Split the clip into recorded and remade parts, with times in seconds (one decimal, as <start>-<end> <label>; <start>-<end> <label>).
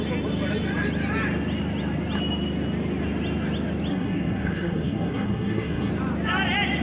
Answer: 0.0-3.9 recorded; 3.9-5.9 remade; 5.9-6.8 recorded